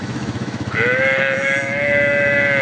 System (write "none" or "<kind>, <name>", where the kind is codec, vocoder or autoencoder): autoencoder, DAC-VAE